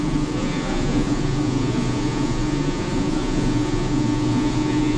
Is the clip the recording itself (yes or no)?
no